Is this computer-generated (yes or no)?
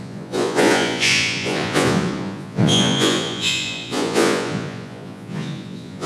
yes